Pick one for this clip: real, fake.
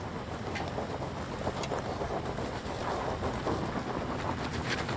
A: real